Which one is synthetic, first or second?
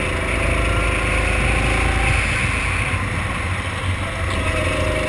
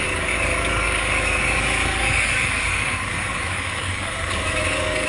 second